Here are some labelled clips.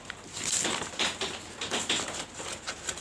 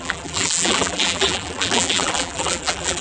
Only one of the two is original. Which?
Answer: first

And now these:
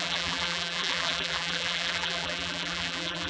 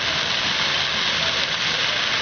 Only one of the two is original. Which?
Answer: second